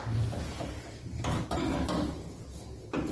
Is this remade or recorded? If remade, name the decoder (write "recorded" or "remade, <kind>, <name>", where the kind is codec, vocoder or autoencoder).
recorded